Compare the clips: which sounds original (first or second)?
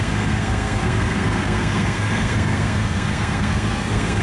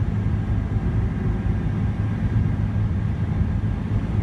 second